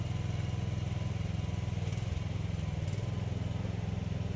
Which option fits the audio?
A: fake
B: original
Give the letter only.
B